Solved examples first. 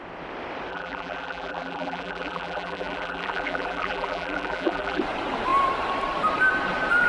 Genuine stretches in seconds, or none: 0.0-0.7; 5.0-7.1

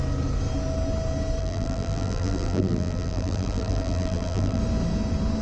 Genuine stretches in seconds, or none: 0.0-1.4; 4.6-5.4

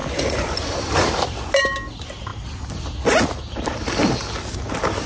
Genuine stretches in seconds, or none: 0.6-5.1

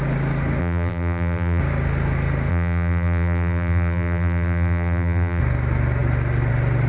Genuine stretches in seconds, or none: 0.0-0.6; 1.6-2.5; 5.4-6.9

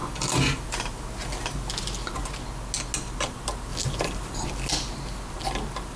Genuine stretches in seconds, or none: 1.0-3.7; 4.7-6.0

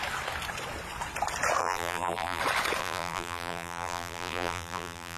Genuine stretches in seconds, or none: 0.0-1.6; 2.4-2.8

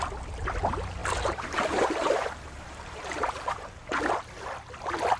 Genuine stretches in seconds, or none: 0.0-1.0; 4.0-5.2